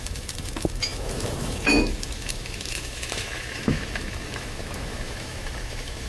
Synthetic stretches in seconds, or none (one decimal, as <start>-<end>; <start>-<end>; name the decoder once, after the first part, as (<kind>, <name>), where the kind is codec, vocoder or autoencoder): 0.0-6.1 (autoencoder, DAC-VAE)